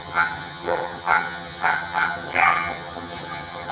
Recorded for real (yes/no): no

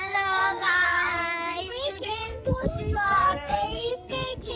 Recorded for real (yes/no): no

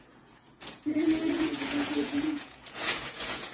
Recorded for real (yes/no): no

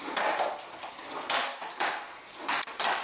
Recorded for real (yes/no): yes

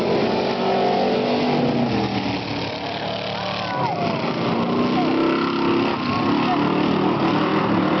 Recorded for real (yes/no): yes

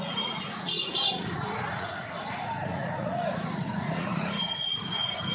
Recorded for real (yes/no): no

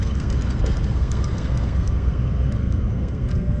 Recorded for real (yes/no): no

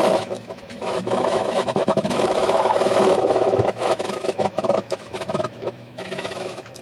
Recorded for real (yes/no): no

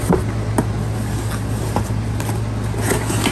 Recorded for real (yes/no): yes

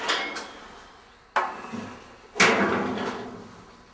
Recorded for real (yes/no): yes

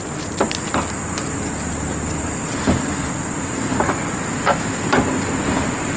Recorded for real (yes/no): yes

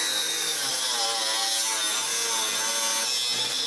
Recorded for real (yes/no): yes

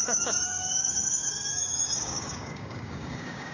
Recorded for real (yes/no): no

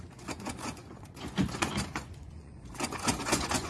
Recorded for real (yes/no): no